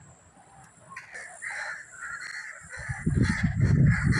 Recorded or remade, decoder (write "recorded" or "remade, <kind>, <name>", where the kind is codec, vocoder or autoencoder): remade, vocoder, BigVGAN v2